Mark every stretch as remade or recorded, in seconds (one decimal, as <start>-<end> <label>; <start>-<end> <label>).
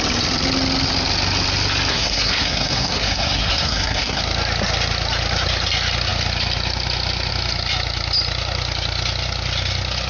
0.0-1.9 recorded; 1.9-4.2 remade; 4.2-10.1 recorded